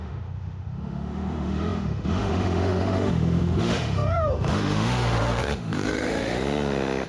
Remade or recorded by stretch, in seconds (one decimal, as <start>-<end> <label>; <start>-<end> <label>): 0.0-7.1 remade